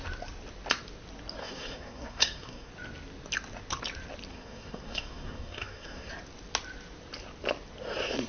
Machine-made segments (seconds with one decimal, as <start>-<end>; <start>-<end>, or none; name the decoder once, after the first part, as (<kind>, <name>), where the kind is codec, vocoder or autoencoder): 1.4-2.7 (codec, SNAC); 4.3-6.1